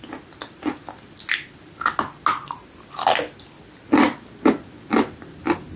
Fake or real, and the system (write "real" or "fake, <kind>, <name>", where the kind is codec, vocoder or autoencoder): real